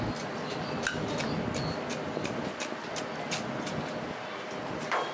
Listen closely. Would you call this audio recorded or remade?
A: recorded